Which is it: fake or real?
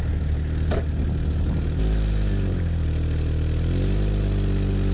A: real